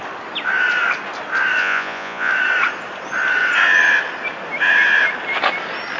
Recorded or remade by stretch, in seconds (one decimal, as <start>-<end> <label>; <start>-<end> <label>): 0.0-1.6 recorded; 1.6-2.3 remade; 2.3-6.0 recorded